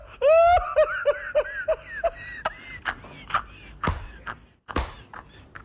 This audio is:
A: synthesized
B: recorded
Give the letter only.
B